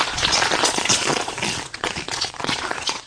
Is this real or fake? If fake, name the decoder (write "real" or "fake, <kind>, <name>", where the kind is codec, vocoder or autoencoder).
fake, vocoder, Vocos